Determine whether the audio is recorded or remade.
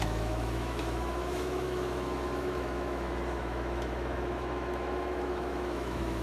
remade